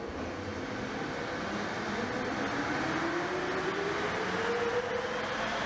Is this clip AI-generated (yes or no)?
no